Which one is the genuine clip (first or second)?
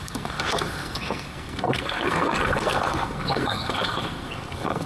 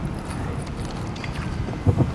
second